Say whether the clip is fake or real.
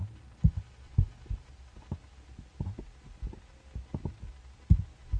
real